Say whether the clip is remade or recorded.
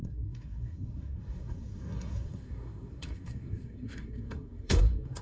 remade